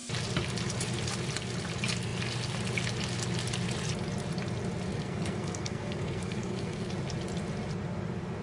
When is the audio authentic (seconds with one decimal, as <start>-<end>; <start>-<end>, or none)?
0.0-4.9; 6.9-8.4